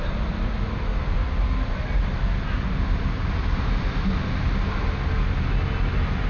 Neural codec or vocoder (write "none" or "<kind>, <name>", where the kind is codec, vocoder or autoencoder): none